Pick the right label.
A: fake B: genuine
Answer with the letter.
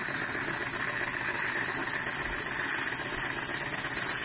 B